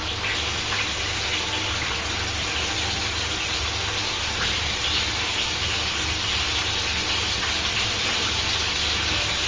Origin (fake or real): real